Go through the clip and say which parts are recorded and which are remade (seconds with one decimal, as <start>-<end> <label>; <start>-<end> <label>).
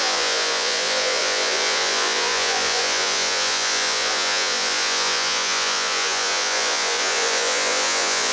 0.0-8.3 remade